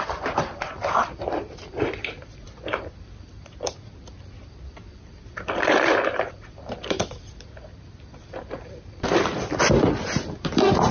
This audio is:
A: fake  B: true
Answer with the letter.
A